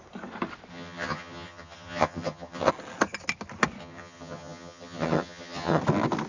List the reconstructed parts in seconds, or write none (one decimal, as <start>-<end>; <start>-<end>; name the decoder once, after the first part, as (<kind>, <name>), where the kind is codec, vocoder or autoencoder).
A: 0.7-2.7 (vocoder, HiFi-GAN); 3.8-5.8